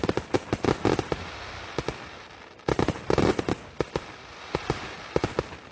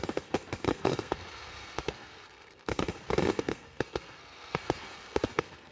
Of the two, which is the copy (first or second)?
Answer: second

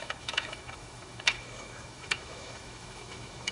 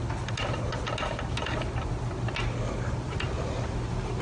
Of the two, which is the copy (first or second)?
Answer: first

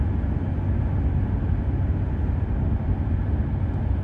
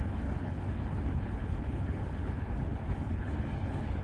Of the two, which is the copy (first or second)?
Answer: second